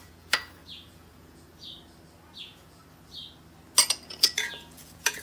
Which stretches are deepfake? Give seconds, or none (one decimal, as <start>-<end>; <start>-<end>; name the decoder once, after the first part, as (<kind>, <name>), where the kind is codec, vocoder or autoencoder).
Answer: 0.0-1.5 (vocoder, Vocos); 2.4-2.8; 3.9-5.2